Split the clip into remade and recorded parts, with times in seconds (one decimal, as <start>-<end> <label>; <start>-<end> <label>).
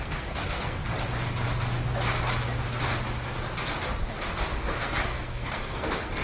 0.0-0.9 remade; 0.9-4.6 recorded; 4.6-6.2 remade